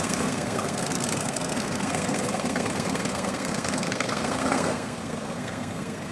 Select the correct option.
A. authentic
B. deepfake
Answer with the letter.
B